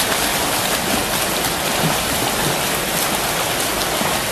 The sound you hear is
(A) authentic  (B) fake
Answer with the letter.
A